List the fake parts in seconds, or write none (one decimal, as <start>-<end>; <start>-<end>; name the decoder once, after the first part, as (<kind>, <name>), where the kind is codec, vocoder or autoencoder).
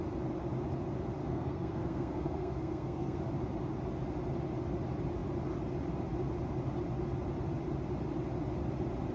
1.2-3.2 (codec, SNAC)